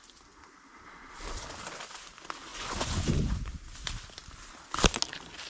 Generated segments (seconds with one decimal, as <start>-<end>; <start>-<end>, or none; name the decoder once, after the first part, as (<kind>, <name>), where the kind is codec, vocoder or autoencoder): 2.5-3.5 (vocoder, Vocos)